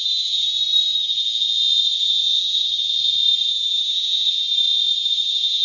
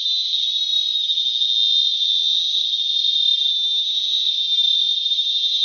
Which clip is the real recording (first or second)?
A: second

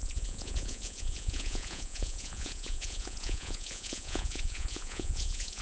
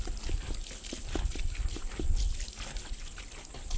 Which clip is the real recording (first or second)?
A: second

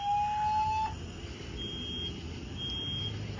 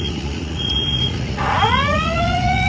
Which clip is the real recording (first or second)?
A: first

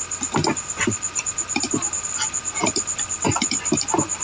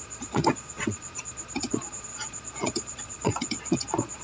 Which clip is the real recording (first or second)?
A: first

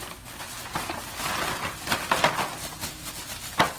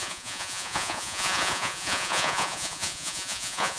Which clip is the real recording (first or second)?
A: first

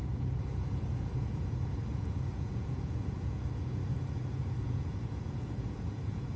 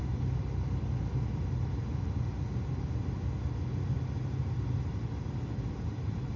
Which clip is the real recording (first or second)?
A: second